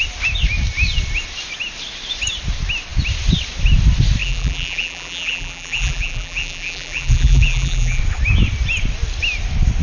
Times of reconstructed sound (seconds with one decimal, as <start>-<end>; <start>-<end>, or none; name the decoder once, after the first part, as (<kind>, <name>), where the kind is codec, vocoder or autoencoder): 4.2-8.0 (vocoder, BigVGAN v2)